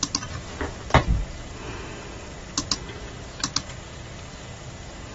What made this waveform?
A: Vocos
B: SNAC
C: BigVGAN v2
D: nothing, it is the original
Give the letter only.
D